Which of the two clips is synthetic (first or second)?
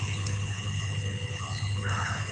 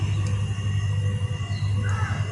first